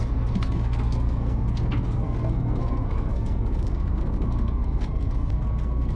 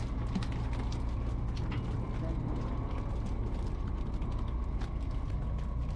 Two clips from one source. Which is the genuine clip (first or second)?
second